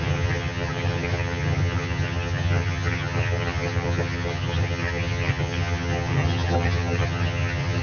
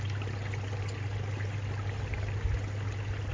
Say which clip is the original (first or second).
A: second